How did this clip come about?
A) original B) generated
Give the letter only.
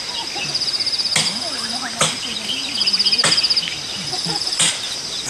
A